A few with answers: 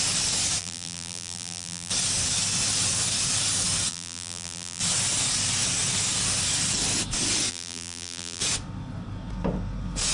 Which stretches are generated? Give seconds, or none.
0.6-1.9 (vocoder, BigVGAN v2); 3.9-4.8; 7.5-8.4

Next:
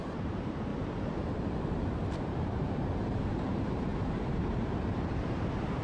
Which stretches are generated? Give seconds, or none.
0.0-0.7 (vocoder, BigVGAN v2); 2.3-5.8

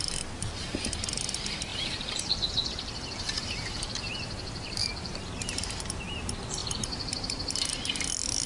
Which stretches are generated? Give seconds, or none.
1.7-5.6 (vocoder, BigVGAN v2); 6.6-7.7

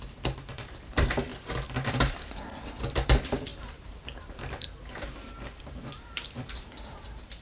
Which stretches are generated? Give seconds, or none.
0.0-1.3 (vocoder, BigVGAN v2); 1.9-7.4